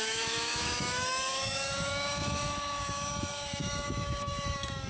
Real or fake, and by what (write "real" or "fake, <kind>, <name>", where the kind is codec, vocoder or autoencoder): fake, autoencoder, DAC-VAE